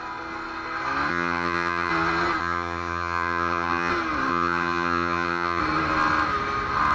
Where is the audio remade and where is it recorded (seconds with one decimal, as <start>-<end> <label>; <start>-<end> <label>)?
0.0-1.1 recorded; 1.1-1.9 remade; 1.9-2.4 recorded; 2.4-3.9 remade; 3.9-4.3 recorded; 4.3-5.6 remade; 5.6-6.9 recorded